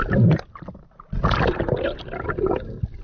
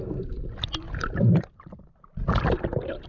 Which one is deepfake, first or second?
second